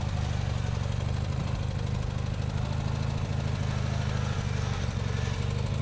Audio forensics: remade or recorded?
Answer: recorded